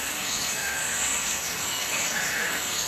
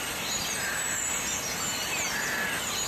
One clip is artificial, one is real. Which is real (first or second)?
second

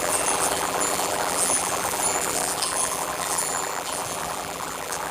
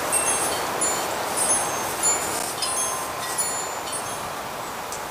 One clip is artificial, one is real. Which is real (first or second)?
second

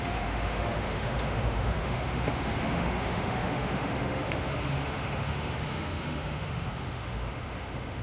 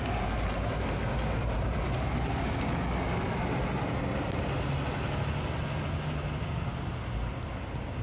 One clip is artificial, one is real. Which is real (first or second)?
second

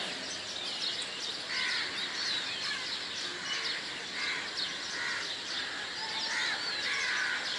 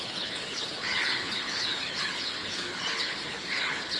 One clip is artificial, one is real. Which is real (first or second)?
first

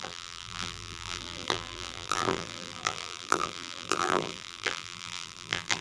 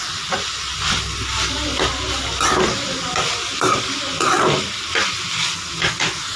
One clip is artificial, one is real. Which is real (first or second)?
second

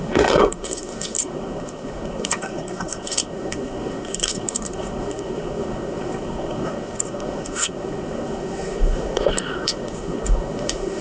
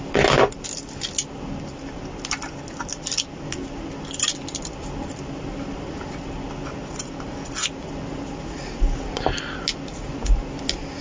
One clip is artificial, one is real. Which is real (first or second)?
second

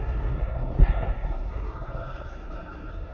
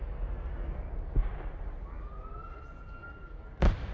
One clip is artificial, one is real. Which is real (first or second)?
second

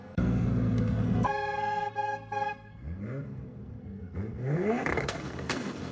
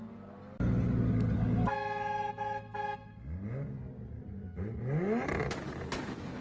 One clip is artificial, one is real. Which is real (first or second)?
second